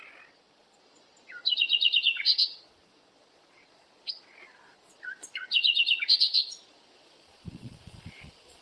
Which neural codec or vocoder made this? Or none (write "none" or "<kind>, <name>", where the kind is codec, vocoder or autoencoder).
vocoder, Vocos